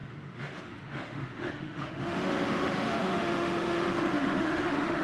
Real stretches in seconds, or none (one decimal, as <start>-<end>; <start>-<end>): none